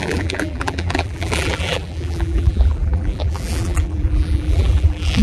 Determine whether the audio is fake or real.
fake